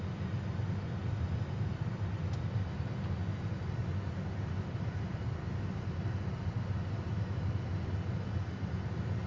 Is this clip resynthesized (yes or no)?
no